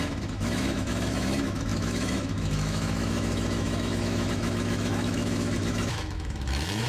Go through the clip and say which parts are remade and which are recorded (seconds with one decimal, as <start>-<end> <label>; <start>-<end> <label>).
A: 0.0-6.9 remade